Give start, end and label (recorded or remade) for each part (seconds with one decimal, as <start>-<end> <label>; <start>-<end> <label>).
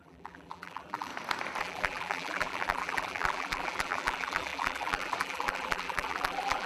0.0-1.1 remade; 1.1-1.6 recorded; 1.6-6.7 remade